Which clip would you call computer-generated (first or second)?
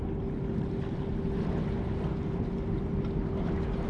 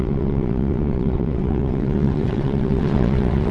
second